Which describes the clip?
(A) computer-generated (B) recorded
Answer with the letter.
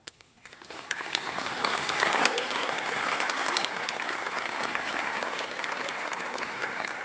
A